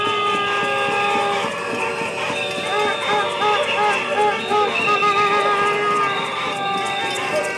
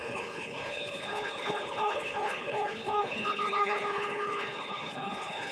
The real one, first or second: first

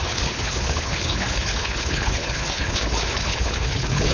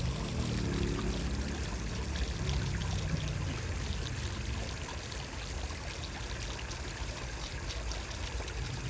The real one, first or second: second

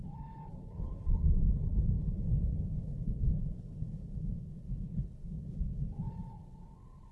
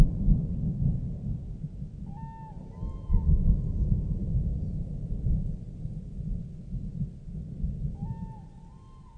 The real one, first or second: second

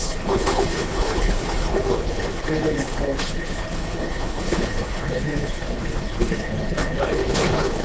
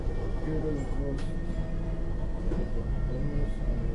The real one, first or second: second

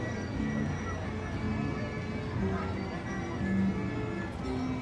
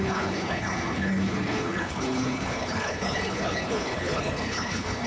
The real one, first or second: first